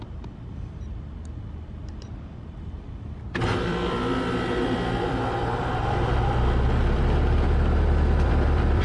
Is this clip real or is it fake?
fake